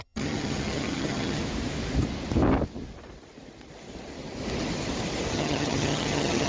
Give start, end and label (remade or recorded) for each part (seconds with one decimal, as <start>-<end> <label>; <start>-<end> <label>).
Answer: 0.0-1.4 remade; 1.4-5.3 recorded; 5.3-6.5 remade